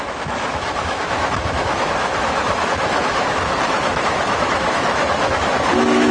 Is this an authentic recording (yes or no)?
no